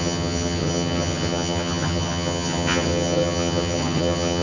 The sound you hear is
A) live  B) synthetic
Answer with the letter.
B